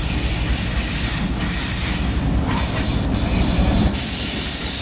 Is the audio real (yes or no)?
yes